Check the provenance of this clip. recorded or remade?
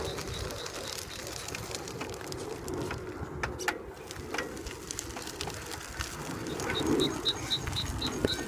recorded